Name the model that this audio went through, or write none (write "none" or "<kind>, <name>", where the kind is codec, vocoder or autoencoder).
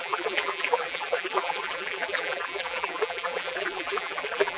vocoder, BigVGAN v2